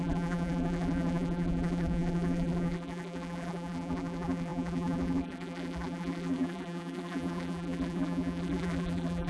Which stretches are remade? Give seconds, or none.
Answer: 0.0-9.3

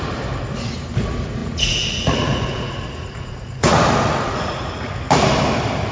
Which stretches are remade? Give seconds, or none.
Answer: 1.4-4.9

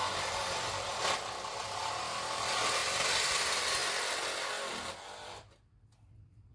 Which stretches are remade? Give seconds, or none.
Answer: none

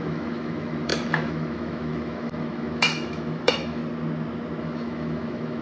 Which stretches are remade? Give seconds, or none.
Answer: 0.0-3.8; 4.6-5.6

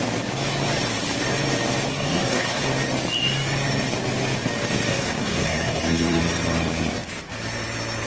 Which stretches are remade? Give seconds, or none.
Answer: 1.9-2.7; 4.9-6.2

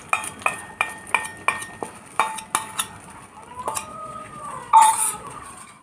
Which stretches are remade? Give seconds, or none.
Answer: 3.9-5.8

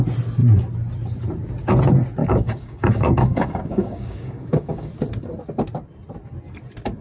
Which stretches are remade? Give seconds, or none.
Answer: 2.2-4.9